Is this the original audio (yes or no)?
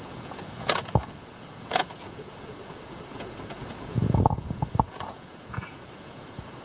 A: no